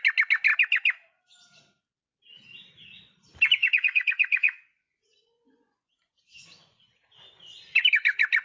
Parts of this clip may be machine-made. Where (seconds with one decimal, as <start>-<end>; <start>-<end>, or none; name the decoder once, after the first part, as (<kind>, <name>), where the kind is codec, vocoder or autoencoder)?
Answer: 3.6-7.0 (vocoder, Vocos)